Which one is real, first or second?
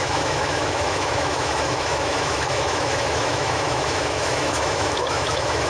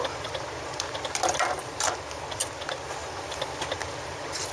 second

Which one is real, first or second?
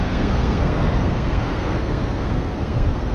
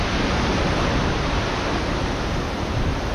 second